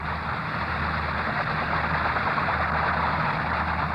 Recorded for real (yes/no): yes